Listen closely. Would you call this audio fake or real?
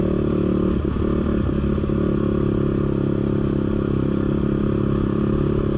real